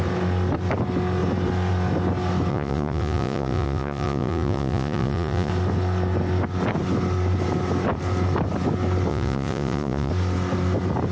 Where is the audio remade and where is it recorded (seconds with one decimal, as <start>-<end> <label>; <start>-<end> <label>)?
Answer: 0.0-2.5 recorded; 2.5-5.5 remade; 5.5-9.1 recorded; 9.1-10.1 remade; 10.1-11.1 recorded